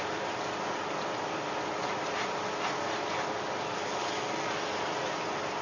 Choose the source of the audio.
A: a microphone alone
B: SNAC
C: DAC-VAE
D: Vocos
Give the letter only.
A